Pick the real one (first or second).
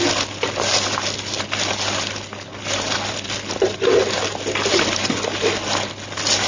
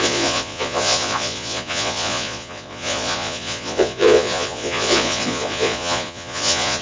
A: first